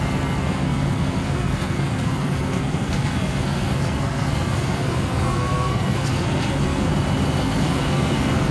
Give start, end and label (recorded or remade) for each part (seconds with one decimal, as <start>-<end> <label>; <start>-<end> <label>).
0.0-6.9 remade; 6.9-7.4 recorded; 7.4-8.5 remade